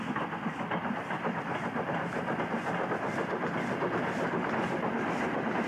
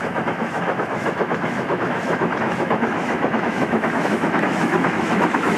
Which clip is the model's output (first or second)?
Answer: second